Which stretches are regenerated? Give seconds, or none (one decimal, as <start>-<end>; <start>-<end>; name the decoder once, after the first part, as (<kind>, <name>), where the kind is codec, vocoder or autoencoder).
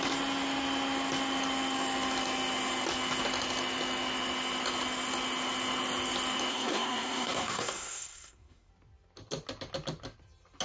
6.5-8.7 (codec, SNAC)